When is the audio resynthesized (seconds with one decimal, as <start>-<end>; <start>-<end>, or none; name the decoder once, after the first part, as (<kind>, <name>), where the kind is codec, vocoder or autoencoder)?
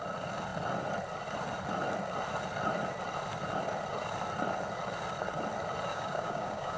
5.9-6.8 (codec, DAC)